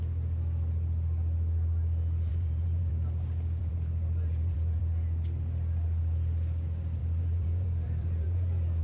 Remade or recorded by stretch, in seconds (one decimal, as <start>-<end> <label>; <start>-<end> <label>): 0.0-2.3 recorded; 2.3-2.9 remade; 2.9-3.6 recorded; 3.6-4.8 remade; 4.8-7.0 recorded; 7.0-8.8 remade